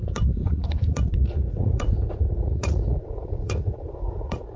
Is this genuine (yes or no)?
no